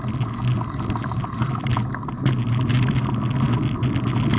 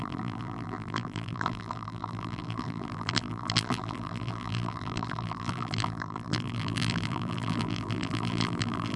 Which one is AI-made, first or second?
second